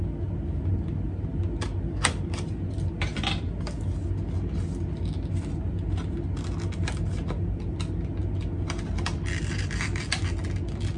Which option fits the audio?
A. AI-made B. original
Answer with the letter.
B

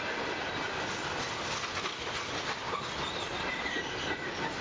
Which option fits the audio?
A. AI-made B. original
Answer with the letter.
B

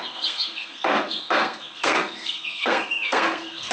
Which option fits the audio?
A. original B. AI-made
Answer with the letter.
B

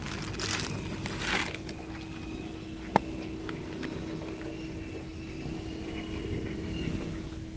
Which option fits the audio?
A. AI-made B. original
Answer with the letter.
B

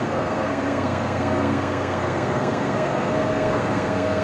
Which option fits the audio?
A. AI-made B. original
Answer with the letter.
A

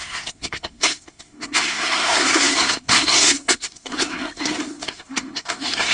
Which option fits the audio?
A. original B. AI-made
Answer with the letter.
B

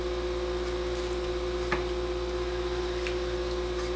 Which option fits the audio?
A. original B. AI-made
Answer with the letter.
A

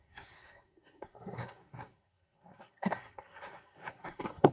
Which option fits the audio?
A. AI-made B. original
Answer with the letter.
A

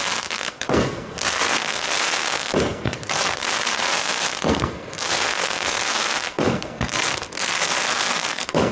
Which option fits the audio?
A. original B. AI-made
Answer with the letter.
B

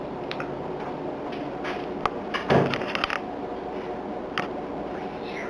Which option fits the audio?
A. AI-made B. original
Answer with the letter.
B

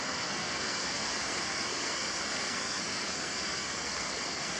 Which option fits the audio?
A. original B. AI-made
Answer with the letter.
B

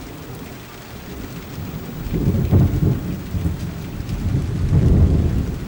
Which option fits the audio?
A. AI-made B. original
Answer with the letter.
B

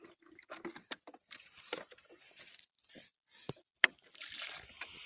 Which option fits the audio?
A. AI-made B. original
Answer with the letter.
B